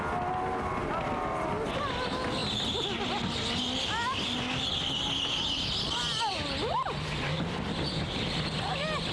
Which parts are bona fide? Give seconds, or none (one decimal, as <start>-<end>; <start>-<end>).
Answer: 0.0-9.1